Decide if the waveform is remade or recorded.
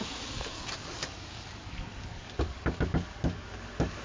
remade